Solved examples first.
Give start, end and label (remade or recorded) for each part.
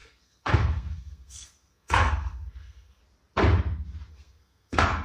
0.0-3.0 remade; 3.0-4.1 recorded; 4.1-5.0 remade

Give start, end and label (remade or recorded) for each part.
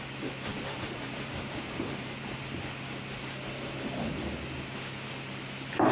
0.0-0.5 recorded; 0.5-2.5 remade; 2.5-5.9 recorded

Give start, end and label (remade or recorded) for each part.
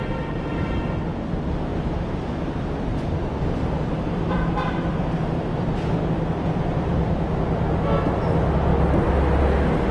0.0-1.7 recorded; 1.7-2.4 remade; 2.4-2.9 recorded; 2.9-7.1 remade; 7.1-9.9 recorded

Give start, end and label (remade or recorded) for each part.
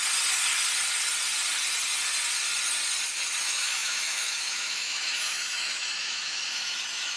0.0-3.4 recorded; 3.4-7.2 remade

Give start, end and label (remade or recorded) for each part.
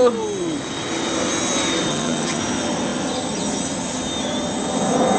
0.0-1.9 recorded; 1.9-2.4 remade; 2.4-5.2 recorded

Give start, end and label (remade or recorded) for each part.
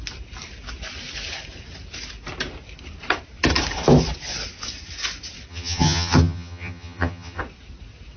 0.0-5.5 recorded; 5.5-7.4 remade; 7.4-8.2 recorded